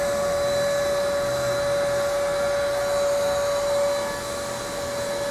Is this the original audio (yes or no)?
yes